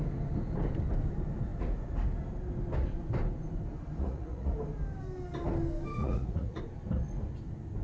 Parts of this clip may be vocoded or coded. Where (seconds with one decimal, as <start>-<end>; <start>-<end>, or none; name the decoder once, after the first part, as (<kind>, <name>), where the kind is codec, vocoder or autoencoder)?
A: 4.0-4.5 (vocoder, Vocos); 6.0-6.6